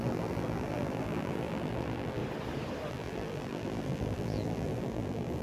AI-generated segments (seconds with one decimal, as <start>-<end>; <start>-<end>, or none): 0.0-2.2; 2.9-5.4